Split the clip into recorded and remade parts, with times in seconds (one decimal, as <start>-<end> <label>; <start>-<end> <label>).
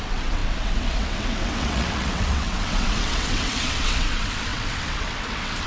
0.0-5.7 remade